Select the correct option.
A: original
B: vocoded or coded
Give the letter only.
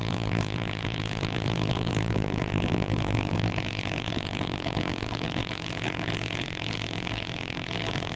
B